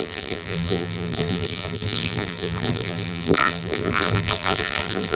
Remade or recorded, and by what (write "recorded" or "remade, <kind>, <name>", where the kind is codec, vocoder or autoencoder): remade, vocoder, BigVGAN v2